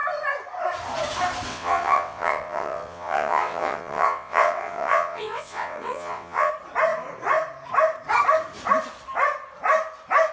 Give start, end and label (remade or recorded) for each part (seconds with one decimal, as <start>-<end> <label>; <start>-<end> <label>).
0.0-1.5 recorded; 1.5-6.5 remade; 6.5-10.3 recorded